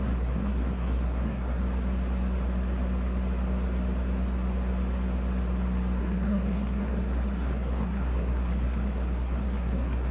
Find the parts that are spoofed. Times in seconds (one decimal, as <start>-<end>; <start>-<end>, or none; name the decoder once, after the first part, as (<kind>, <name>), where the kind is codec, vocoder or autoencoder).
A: 0.0-1.6 (codec, SNAC); 6.0-10.1